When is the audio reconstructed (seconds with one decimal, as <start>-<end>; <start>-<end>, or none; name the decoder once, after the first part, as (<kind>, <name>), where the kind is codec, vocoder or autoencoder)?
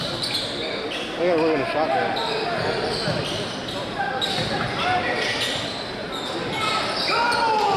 6.0-6.5 (vocoder, BigVGAN v2)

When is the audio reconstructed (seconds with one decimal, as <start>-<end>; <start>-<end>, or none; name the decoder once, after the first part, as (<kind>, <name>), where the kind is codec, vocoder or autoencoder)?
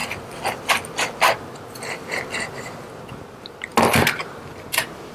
none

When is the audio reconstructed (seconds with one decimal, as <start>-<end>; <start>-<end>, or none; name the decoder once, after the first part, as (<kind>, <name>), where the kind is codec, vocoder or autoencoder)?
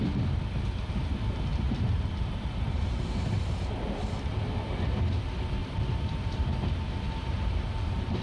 1.5-3.8 (vocoder, BigVGAN v2); 5.6-6.7; 7.2-8.2